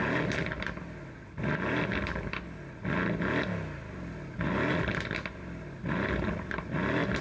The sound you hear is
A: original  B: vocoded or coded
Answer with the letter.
A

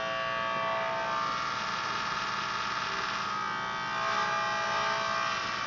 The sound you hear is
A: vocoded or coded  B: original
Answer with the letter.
B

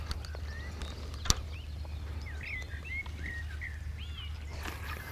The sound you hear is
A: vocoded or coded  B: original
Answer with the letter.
B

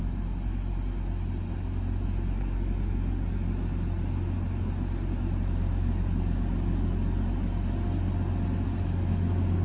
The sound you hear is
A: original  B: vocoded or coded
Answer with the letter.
A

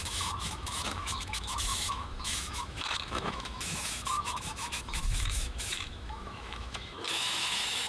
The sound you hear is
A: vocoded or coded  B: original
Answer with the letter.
A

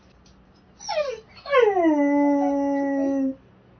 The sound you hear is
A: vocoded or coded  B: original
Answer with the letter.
B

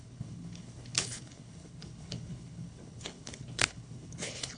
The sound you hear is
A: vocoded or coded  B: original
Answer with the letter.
A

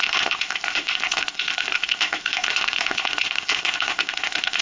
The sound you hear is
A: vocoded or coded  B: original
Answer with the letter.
A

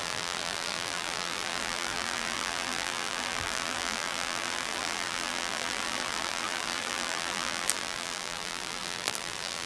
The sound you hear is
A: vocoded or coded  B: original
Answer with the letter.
A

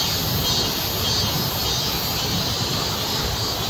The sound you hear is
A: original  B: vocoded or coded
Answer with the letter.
A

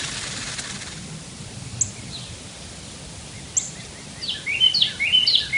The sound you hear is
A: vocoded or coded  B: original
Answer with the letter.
B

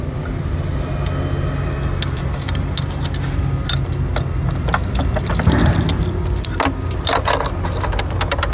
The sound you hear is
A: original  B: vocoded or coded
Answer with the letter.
A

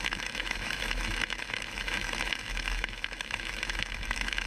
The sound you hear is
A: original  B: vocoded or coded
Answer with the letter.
B